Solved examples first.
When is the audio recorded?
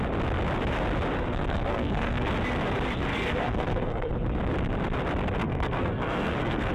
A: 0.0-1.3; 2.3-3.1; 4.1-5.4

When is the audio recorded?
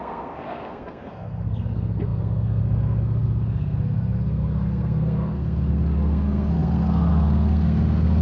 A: none